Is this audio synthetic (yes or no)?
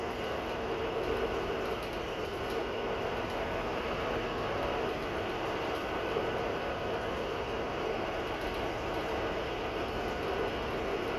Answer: no